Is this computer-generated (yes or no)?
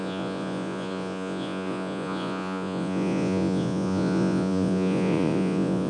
yes